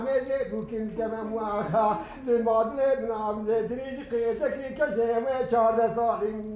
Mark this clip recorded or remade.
recorded